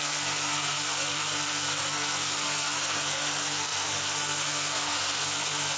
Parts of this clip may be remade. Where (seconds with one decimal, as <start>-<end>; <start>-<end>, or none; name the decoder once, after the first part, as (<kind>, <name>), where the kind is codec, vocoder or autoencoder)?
0.0-5.8 (codec, SNAC)